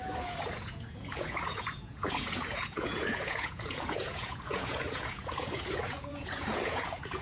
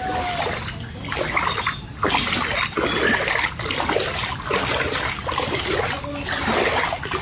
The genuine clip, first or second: second